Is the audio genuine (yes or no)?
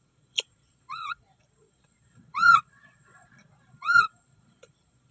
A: no